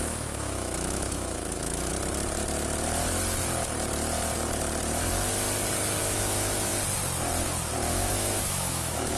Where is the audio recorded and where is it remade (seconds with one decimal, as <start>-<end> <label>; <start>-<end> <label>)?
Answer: 0.0-1.9 remade; 1.9-6.0 recorded; 6.0-6.7 remade; 6.7-7.9 recorded; 7.9-9.2 remade